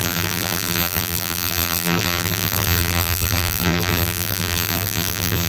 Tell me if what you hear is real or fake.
fake